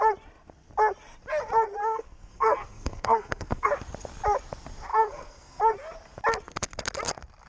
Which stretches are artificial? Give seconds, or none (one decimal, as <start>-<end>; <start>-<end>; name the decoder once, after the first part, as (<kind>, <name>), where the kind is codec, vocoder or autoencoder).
1.8-3.7 (codec, SNAC); 4.9-5.6